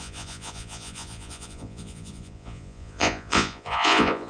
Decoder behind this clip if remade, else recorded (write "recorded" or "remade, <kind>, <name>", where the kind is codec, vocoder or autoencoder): remade, vocoder, Vocos